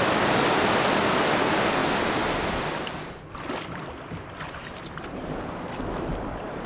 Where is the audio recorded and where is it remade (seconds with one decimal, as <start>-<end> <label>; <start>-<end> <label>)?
0.0-6.7 recorded